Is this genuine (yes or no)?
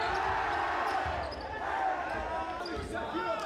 yes